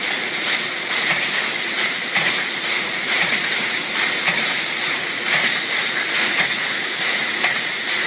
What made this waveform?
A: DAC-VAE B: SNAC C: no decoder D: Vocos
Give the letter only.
D